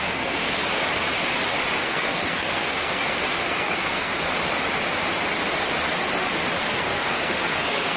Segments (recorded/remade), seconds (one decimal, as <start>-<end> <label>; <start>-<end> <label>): 0.0-0.6 remade; 0.6-1.8 recorded; 1.8-4.1 remade; 4.1-6.6 recorded; 6.6-8.0 remade